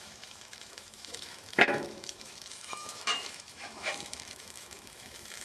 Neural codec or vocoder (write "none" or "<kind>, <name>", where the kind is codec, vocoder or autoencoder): autoencoder, DAC-VAE